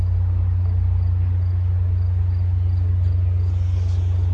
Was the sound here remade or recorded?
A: recorded